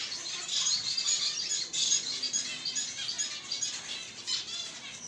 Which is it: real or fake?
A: real